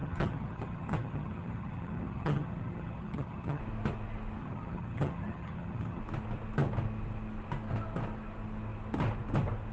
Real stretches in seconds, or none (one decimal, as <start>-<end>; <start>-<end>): 3.6-4.4; 6.0-9.7

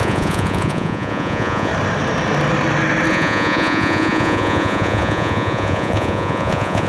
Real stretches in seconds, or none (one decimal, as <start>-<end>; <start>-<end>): 1.7-3.1

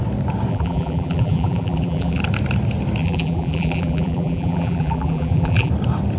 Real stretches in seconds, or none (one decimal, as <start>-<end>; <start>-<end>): 0.0-0.5; 2.2-3.0; 5.7-6.2

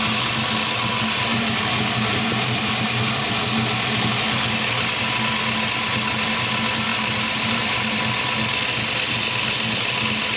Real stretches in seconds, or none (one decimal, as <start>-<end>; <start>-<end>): 0.0-1.3; 3.3-6.9; 8.0-10.4

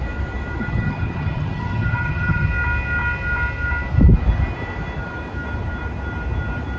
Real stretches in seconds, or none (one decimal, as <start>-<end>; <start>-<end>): 0.0-0.6; 2.5-6.8

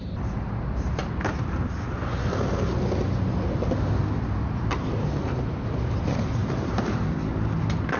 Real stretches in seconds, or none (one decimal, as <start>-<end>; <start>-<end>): 0.0-6.4; 7.1-8.0